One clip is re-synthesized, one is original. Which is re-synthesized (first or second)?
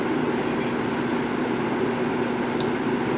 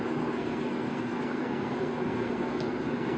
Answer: second